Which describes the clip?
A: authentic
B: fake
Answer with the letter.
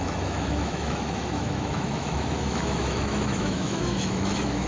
B